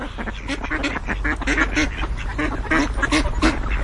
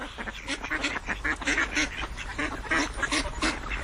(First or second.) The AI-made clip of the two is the second